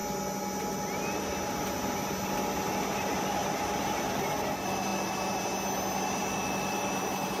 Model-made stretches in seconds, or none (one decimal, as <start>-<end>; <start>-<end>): none